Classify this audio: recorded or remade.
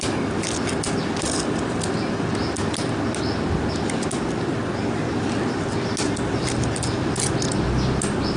recorded